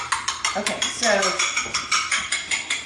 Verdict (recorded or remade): recorded